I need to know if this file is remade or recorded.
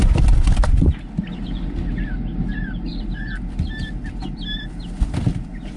recorded